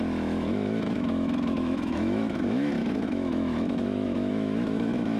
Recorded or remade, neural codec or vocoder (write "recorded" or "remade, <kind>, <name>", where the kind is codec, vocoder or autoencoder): remade, autoencoder, DAC-VAE